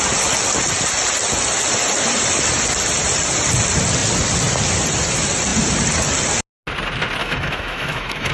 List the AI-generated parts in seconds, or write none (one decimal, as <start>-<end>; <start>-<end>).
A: 7.2-8.3